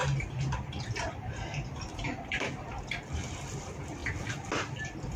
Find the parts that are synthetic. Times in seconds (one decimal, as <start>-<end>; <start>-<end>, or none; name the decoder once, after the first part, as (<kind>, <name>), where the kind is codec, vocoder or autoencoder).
none